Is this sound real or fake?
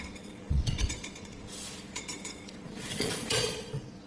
fake